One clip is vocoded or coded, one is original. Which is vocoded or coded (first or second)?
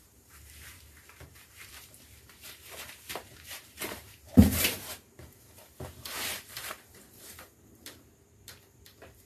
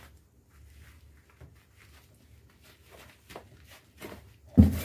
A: first